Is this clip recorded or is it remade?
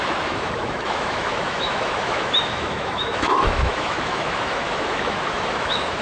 remade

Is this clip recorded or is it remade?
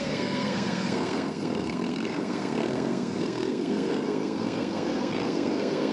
remade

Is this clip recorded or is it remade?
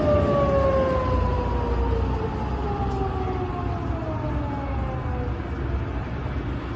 recorded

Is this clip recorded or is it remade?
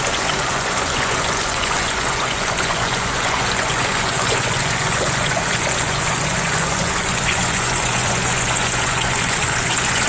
remade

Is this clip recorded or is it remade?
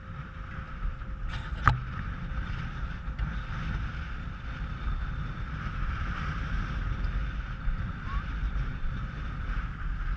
recorded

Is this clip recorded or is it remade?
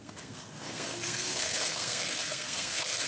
remade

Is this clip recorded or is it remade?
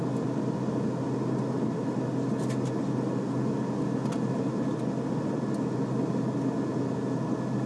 recorded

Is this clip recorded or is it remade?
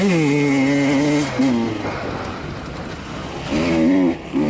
recorded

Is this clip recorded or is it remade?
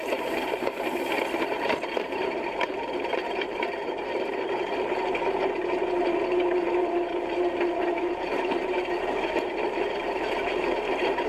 remade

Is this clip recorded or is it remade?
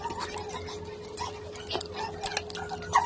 recorded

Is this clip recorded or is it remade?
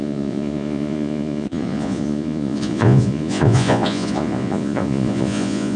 remade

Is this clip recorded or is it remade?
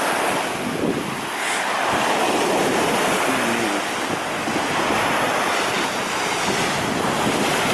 recorded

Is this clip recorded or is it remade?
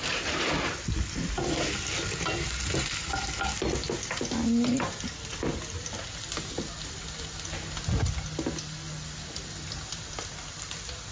recorded